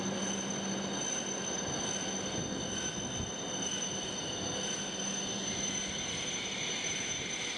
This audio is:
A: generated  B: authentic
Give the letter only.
B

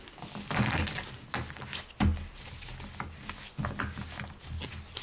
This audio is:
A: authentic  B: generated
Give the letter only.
A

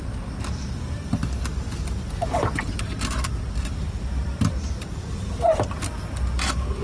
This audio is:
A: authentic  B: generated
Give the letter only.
A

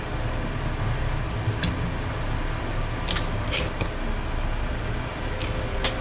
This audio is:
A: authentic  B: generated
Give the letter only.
A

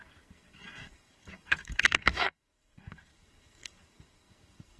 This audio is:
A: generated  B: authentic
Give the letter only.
A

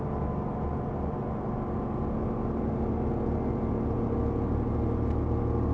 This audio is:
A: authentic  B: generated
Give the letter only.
A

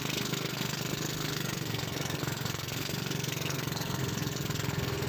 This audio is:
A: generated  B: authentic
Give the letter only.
A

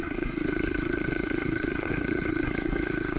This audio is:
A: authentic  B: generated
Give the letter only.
B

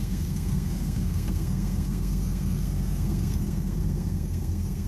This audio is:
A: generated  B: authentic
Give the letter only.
A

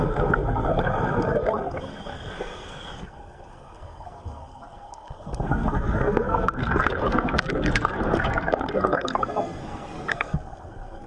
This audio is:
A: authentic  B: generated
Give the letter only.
B